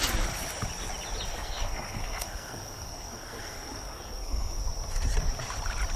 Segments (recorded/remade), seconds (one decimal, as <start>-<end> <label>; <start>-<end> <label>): 0.0-1.3 recorded; 1.3-4.6 remade; 4.6-6.0 recorded